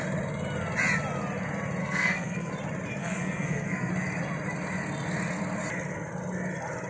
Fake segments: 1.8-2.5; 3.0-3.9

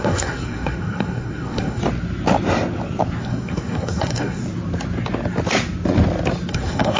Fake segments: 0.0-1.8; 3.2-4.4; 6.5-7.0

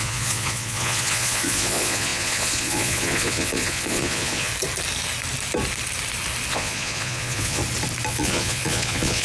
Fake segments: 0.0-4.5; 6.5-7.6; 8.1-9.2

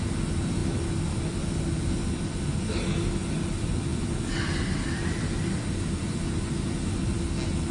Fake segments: none

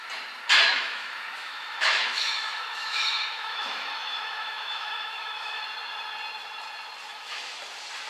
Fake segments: 0.7-5.6; 7.1-7.6

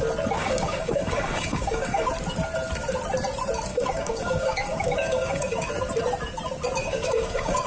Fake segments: 0.4-2.1; 3.7-5.7; 6.8-7.7